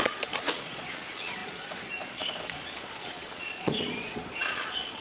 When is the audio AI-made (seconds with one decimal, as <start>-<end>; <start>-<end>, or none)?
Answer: 0.0-5.0